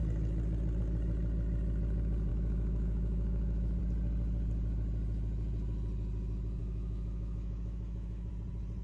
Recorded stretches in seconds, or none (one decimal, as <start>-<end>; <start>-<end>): 0.0-2.3; 3.8-6.6; 8.3-8.8